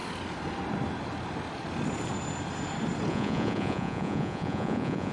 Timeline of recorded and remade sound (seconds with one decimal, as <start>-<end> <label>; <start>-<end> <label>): 0.0-3.1 recorded; 3.1-5.1 remade